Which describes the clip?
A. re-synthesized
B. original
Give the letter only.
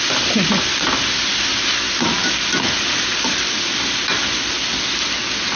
B